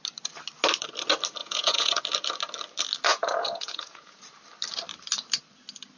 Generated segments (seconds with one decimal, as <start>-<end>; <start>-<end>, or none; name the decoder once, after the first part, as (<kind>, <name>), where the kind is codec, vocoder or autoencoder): 1.4-2.0 (vocoder, Vocos); 3.1-4.2